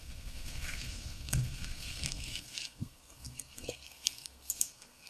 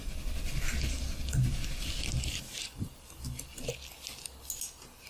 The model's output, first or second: first